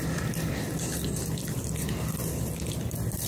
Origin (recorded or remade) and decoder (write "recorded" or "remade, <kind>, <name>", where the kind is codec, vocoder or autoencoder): remade, vocoder, BigVGAN v2